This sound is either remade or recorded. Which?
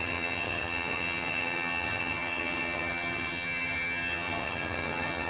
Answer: remade